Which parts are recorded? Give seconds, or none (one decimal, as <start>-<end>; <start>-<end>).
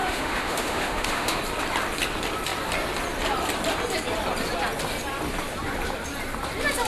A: 1.4-6.9